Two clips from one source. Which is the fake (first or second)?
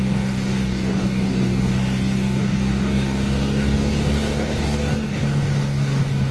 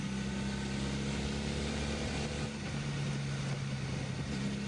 first